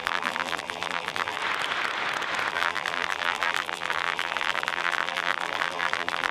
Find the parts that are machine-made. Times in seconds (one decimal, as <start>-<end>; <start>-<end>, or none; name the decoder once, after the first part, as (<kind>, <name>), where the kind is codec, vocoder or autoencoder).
0.0-1.4 (vocoder, BigVGAN v2); 2.5-6.3